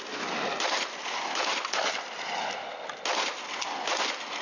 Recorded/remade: recorded